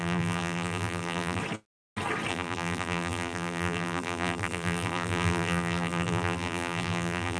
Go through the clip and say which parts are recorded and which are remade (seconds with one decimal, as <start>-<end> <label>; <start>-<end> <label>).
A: 0.0-1.4 remade; 1.4-2.3 recorded; 2.3-7.4 remade